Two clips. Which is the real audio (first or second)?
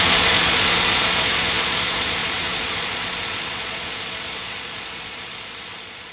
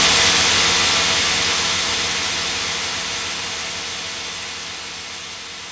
second